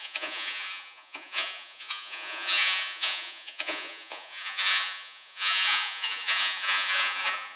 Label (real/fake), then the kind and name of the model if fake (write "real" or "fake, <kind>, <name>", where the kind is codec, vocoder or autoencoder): fake, vocoder, Vocos